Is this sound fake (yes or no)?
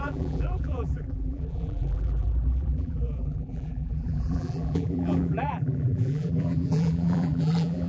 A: yes